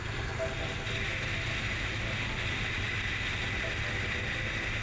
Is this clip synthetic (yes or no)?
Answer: no